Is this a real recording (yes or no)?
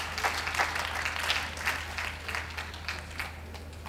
yes